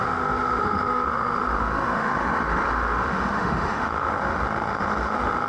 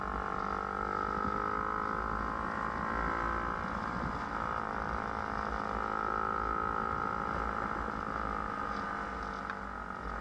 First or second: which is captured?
second